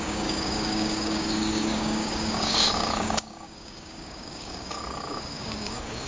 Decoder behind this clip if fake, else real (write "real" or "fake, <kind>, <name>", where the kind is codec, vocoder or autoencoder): fake, codec, DAC